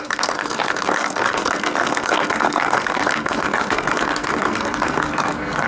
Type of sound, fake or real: fake